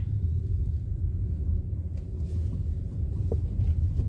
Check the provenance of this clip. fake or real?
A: real